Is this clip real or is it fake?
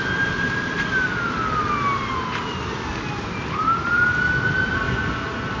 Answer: real